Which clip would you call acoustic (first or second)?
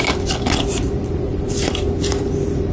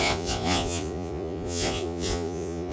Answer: first